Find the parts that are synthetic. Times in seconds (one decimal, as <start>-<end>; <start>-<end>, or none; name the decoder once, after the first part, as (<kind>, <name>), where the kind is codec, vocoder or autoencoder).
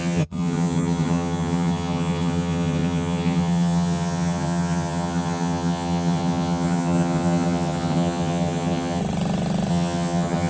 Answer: 0.0-9.0 (vocoder, HiFi-GAN); 9.7-10.5